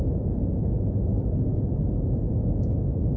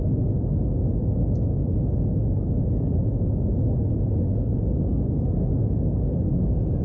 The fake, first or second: first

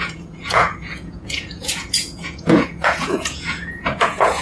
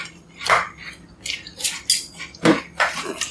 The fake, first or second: first